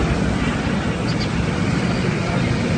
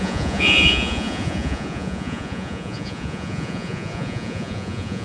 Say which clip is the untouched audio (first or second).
first